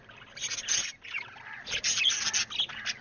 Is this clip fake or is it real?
real